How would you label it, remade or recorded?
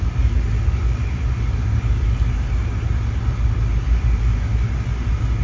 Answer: recorded